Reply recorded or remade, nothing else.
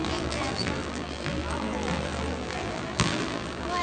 remade